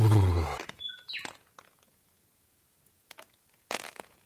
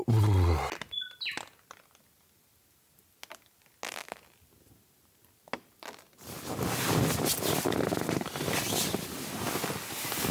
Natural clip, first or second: second